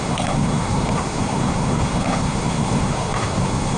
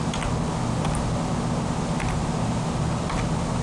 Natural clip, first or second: second